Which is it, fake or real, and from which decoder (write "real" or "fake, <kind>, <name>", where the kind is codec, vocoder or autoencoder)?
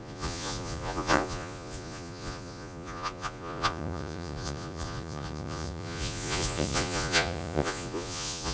fake, vocoder, Vocos